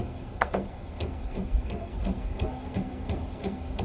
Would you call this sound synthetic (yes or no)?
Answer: yes